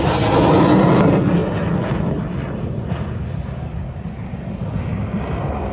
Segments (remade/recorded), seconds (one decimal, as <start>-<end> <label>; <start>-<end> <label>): 0.0-5.7 recorded